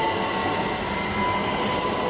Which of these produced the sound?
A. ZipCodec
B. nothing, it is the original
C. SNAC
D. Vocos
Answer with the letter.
B